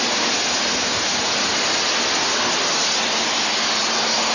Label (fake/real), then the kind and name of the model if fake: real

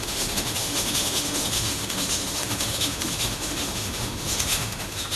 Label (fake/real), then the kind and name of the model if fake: fake, autoencoder, DAC-VAE